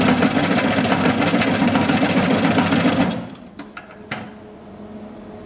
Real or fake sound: real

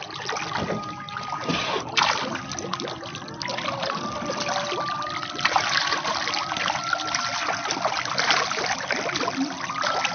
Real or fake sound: real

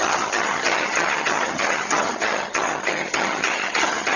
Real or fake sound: fake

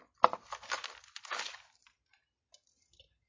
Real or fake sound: real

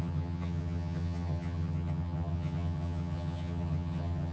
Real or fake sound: fake